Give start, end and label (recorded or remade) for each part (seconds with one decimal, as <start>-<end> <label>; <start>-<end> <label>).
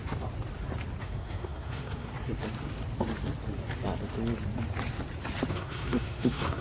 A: 0.0-1.0 recorded; 1.0-2.1 remade; 2.1-5.5 recorded; 5.5-6.6 remade